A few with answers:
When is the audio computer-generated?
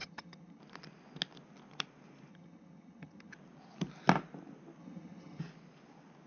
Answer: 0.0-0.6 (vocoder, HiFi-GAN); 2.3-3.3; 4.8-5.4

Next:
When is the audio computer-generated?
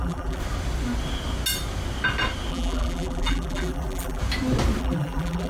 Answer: 0.0-0.4 (vocoder, BigVGAN v2); 2.5-4.2; 4.8-5.5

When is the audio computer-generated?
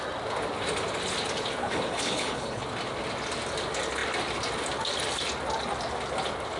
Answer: 1.6-2.6 (codec, HILCodec)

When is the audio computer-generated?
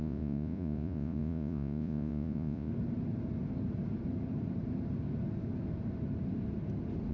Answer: 0.0-2.7 (vocoder, Vocos)